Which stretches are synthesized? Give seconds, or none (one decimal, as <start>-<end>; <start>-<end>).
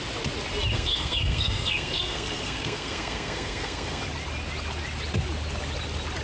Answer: 0.7-4.0